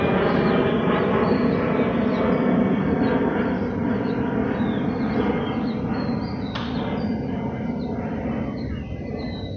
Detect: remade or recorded recorded